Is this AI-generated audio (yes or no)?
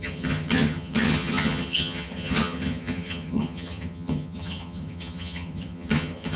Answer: yes